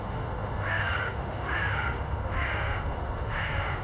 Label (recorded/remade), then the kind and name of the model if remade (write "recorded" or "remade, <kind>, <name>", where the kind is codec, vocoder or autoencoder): remade, autoencoder, DAC-VAE